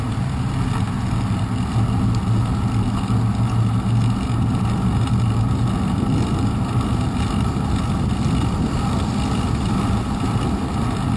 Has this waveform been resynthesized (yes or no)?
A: no